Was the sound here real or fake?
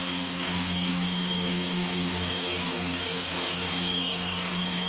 fake